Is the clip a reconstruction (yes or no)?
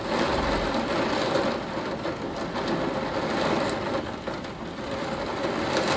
no